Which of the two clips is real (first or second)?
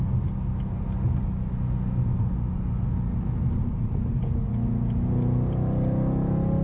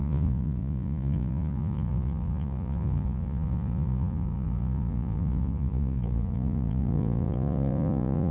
first